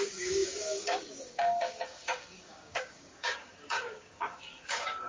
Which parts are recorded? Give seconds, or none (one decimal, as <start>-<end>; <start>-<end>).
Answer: none

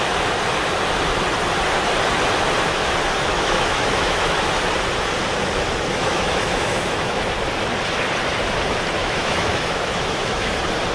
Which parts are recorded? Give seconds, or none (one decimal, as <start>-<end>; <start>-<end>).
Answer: 0.0-3.3; 4.5-5.9; 7.2-9.0; 10.5-10.9

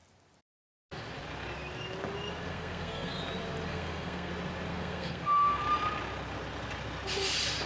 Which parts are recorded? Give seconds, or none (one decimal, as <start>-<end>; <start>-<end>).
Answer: 0.0-2.5; 3.1-3.7; 4.3-4.7; 5.6-7.7